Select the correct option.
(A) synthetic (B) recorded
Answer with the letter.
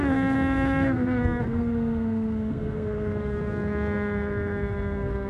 A